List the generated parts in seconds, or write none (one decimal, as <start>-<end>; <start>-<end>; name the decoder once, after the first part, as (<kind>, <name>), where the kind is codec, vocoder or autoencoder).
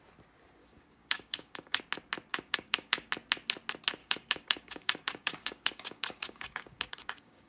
0.6-1.8 (codec, DAC); 2.3-3.1; 4.0-7.5